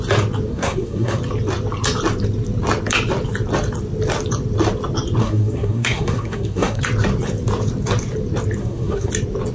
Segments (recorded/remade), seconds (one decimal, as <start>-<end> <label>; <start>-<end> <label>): 0.0-0.5 recorded; 0.5-1.2 remade; 1.2-5.2 recorded; 5.2-6.8 remade; 6.8-8.6 recorded; 8.6-9.1 remade; 9.1-9.5 recorded